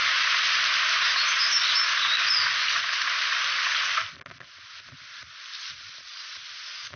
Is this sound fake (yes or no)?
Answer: no